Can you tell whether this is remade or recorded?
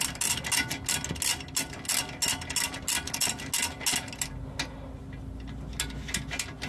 recorded